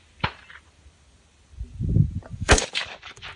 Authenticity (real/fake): fake